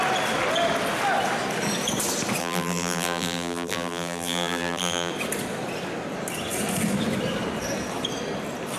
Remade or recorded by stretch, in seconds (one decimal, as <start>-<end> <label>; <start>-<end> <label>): 0.0-2.4 recorded; 2.4-5.1 remade; 5.1-8.8 recorded